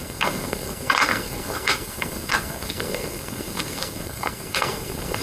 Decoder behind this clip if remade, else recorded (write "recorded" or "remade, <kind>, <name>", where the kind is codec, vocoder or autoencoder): remade, codec, SNAC